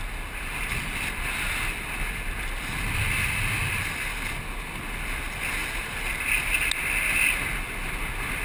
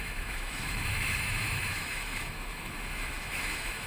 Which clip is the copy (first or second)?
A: second